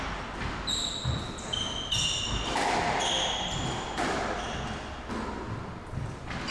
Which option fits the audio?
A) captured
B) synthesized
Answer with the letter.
A